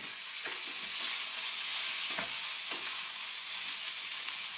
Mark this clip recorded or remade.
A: remade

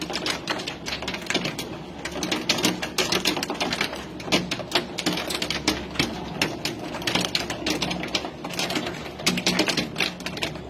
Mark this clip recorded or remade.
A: recorded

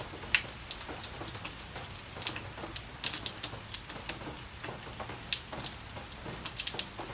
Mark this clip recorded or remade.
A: recorded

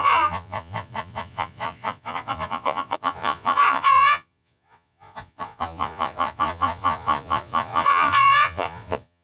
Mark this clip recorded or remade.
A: remade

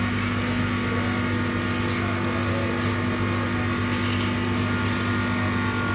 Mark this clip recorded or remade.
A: recorded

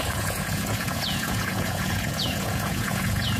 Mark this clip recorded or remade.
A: remade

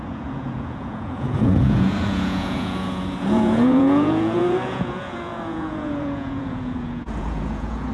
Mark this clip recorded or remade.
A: remade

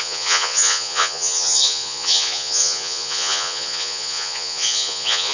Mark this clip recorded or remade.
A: remade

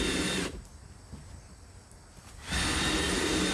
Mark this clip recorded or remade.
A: recorded